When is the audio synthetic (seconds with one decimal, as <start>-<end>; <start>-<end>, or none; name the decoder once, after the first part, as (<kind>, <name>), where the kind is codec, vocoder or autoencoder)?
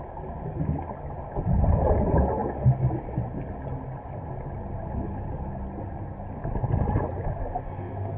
7.4-8.2 (codec, SNAC)